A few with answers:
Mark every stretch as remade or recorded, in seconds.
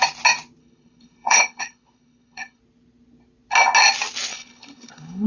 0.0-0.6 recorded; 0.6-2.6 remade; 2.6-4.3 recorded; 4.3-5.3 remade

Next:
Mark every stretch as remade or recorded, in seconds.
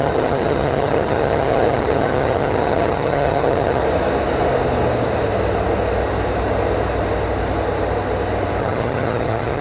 0.0-3.8 remade; 3.8-8.6 recorded; 8.6-9.6 remade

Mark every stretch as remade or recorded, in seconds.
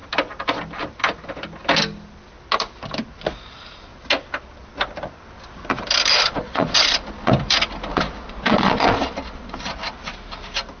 0.0-6.1 recorded; 6.1-7.3 remade; 7.3-7.9 recorded; 7.9-9.6 remade; 9.6-10.8 recorded